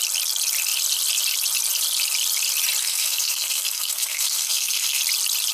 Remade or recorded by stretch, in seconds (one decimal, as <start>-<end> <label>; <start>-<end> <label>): 0.0-2.8 recorded; 2.8-5.0 remade; 5.0-5.5 recorded